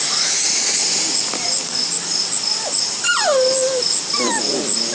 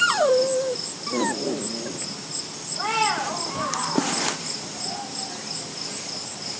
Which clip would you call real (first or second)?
first